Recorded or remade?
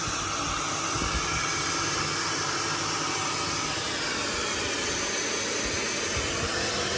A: recorded